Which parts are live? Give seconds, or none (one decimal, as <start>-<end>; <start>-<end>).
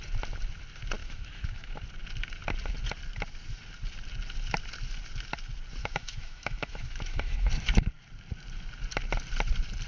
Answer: 0.0-1.0; 1.8-5.8; 7.5-9.9